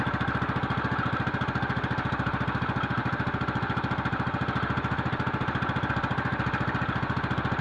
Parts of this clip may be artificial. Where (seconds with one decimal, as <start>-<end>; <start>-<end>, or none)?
none